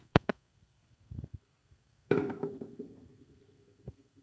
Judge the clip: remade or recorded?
remade